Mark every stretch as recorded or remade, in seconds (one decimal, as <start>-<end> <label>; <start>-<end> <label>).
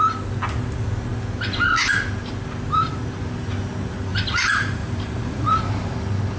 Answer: 0.0-4.1 recorded; 4.1-5.6 remade; 5.6-6.4 recorded